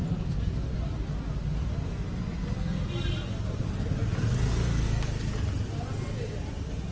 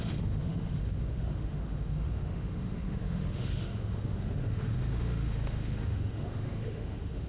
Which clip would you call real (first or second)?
first